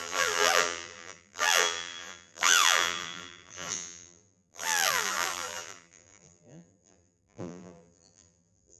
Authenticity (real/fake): fake